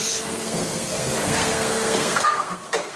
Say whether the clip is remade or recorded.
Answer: remade